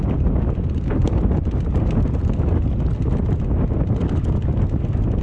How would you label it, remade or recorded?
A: recorded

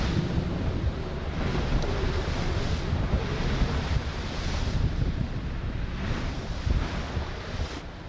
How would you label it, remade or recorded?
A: recorded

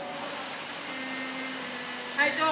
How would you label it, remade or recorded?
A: recorded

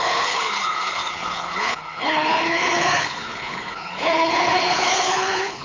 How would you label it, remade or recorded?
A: remade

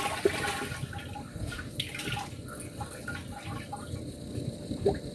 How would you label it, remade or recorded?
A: recorded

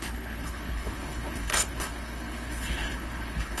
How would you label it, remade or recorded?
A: remade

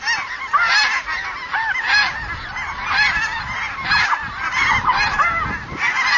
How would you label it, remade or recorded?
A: recorded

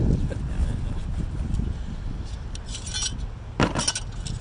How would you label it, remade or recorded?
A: recorded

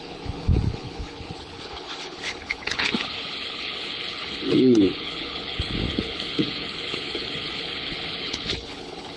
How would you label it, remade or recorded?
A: remade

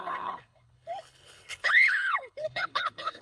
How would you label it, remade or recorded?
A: remade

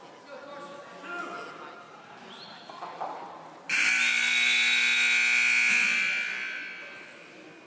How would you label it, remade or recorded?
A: recorded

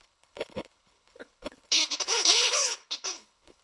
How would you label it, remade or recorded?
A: remade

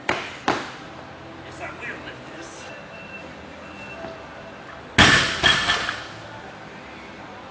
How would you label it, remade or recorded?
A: recorded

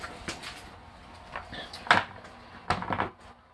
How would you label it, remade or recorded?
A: recorded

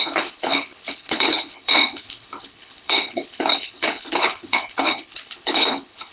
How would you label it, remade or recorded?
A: remade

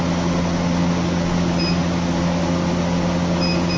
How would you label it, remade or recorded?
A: recorded